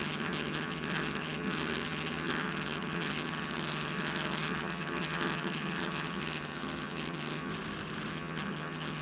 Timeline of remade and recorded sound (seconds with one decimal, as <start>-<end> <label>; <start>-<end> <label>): 0.0-7.5 remade; 7.5-8.1 recorded; 8.1-9.0 remade